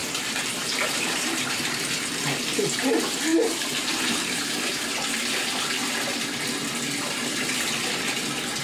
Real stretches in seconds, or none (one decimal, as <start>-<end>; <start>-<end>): 2.1-3.3; 5.2-8.6